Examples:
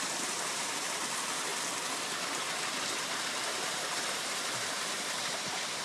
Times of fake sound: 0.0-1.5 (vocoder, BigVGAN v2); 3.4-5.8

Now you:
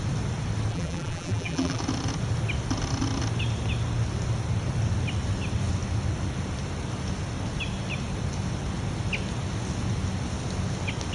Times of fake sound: 0.7-1.8 (vocoder, BigVGAN v2)

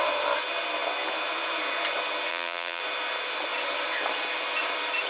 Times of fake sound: 2.3-2.8 (vocoder, BigVGAN v2)